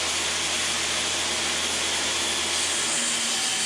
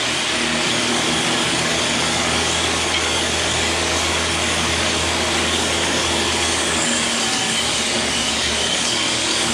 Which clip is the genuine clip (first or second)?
first